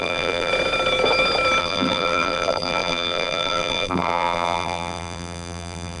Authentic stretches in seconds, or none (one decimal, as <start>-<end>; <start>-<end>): 0.5-1.6